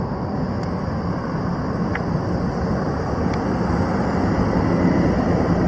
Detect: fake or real real